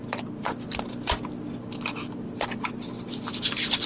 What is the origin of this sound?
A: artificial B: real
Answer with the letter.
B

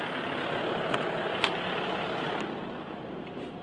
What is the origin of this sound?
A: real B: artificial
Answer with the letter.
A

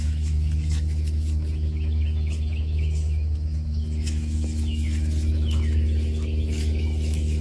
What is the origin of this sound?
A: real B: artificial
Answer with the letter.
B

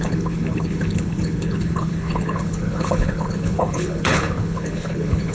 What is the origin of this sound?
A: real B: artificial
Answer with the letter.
B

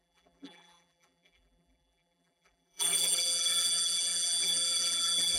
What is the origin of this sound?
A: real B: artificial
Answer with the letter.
B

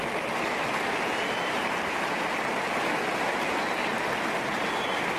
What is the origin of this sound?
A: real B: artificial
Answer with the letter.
A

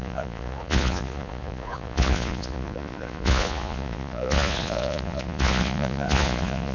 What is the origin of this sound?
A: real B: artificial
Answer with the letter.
B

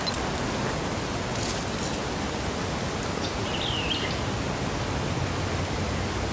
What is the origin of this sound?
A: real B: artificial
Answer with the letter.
A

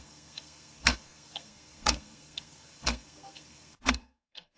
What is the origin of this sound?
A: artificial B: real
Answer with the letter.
A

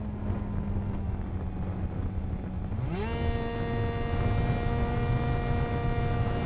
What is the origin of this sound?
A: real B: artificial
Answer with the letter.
A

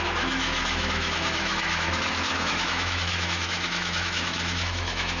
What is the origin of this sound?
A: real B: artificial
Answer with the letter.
B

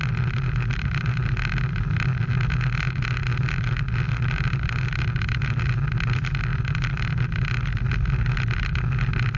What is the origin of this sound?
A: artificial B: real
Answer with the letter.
B